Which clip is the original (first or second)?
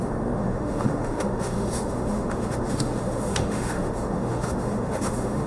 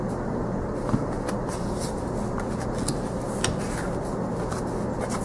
second